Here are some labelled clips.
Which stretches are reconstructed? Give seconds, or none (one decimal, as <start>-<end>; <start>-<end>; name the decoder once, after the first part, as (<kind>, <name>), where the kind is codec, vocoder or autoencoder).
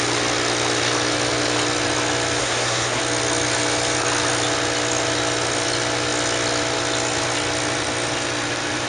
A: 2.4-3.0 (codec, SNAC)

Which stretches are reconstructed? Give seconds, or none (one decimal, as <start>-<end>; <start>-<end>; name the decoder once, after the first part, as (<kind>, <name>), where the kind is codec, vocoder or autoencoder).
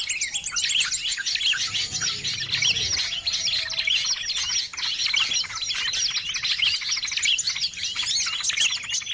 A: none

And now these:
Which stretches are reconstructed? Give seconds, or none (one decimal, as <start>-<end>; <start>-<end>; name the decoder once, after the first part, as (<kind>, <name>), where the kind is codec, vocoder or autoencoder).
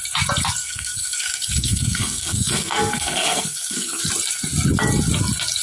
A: 0.6-4.0 (codec, SNAC)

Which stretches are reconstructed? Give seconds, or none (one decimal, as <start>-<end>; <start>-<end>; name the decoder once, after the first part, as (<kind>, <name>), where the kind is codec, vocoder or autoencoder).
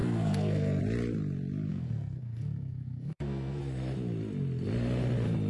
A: 0.0-0.8 (codec, SNAC); 1.7-3.6